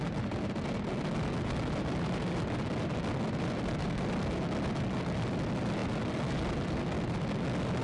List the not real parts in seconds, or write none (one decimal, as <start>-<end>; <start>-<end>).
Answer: none